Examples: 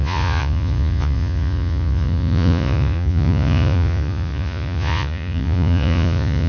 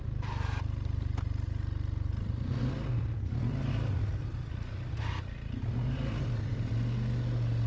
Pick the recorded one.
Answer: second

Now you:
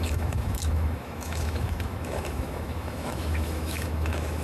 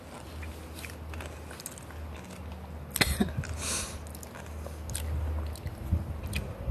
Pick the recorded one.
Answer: second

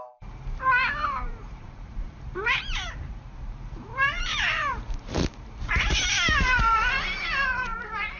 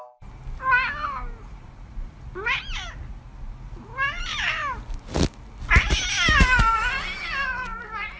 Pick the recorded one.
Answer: second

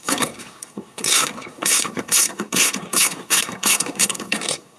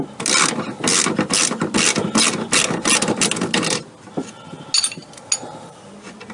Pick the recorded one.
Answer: second